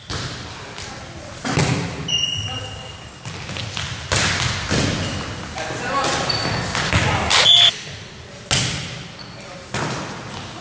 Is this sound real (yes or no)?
yes